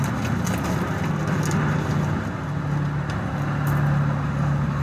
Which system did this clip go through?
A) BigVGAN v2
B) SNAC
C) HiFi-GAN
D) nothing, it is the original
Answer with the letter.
D